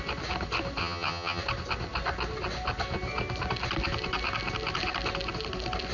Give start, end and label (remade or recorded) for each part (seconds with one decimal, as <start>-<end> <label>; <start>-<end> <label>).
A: 0.0-0.8 recorded; 0.8-1.4 remade; 1.4-5.9 recorded